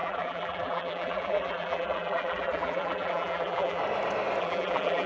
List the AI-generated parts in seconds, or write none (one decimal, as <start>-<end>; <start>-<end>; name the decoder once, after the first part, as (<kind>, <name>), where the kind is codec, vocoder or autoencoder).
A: 0.0-3.8 (vocoder, BigVGAN v2); 4.4-5.1